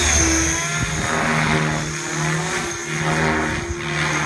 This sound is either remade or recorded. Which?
recorded